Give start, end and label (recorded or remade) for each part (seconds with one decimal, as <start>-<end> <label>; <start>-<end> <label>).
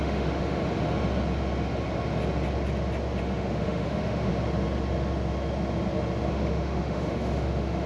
0.0-0.6 remade; 0.6-3.2 recorded; 3.2-4.3 remade; 4.3-6.3 recorded; 6.3-7.9 remade